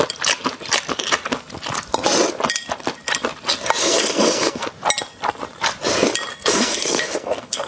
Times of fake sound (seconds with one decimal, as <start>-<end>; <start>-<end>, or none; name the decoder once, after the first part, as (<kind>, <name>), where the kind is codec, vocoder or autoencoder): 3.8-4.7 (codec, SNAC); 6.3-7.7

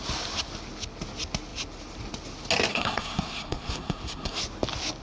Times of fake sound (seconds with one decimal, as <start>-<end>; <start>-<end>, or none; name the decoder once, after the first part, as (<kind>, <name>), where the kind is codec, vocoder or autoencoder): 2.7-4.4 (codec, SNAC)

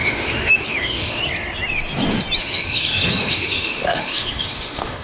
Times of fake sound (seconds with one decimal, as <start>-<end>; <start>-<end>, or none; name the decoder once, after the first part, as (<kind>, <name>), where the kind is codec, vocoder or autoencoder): 0.0-1.2 (autoencoder, DAC-VAE); 2.4-5.0

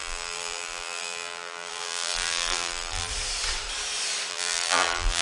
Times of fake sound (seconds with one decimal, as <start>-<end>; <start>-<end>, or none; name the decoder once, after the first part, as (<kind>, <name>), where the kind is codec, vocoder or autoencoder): 0.0-3.1 (vocoder, BigVGAN v2); 4.3-5.2

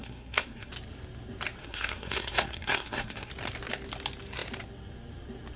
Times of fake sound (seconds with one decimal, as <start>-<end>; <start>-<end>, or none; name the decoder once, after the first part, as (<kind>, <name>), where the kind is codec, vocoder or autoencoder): 0.0-0.7 (codec, SNAC); 1.6-3.3

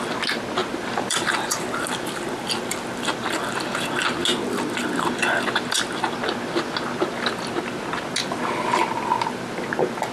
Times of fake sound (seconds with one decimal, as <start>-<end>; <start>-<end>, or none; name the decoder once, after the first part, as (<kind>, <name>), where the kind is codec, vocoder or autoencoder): 0.6-3.4 (vocoder, BigVGAN v2); 4.3-5.1

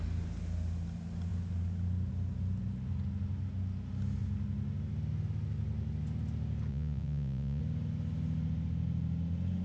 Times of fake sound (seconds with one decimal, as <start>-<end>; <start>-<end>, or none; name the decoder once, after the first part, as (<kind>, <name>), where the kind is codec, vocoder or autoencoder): 6.7-7.6 (vocoder, Vocos)